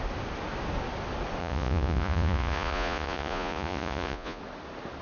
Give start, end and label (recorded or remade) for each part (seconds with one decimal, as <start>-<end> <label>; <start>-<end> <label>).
0.0-1.4 recorded; 1.4-4.4 remade; 4.4-5.0 recorded